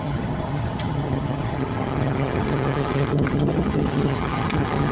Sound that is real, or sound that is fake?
fake